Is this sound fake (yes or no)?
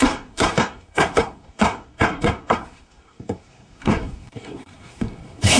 yes